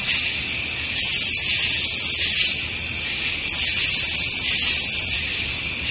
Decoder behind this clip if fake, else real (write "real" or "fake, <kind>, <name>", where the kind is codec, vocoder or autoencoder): real